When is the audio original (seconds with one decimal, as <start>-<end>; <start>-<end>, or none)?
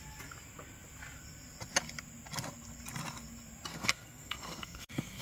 0.0-3.7